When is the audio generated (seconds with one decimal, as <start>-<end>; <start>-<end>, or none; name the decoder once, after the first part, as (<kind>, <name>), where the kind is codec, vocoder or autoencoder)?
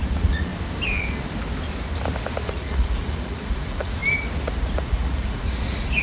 0.0-0.5 (vocoder, Vocos); 2.5-4.0; 4.6-6.0